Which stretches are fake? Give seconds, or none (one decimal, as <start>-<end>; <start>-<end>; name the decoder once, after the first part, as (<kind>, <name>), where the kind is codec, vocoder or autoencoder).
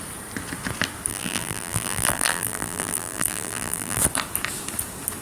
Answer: 1.1-4.0 (vocoder, BigVGAN v2)